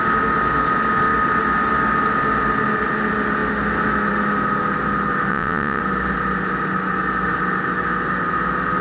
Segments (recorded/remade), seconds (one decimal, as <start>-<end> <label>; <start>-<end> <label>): 0.0-5.3 recorded; 5.3-5.8 remade; 5.8-8.8 recorded

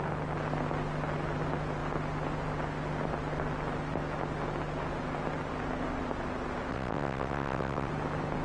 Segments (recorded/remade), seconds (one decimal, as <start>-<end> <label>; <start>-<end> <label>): 0.0-6.7 recorded; 6.7-7.9 remade; 7.9-8.4 recorded